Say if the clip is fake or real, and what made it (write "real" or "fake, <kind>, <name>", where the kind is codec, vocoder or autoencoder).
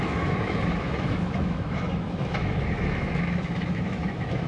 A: fake, autoencoder, DAC-VAE